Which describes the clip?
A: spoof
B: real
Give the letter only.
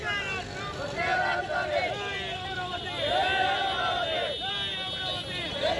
B